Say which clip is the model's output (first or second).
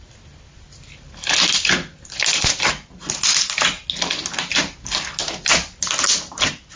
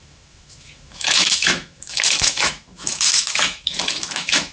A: second